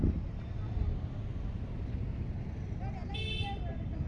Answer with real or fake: real